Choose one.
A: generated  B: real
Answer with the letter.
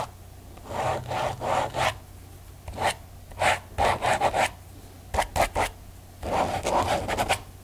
B